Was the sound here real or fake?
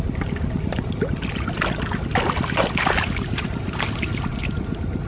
real